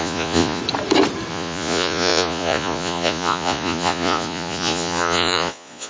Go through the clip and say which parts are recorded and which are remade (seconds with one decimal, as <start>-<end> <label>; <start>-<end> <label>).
0.0-0.6 remade; 0.6-1.3 recorded; 1.3-5.9 remade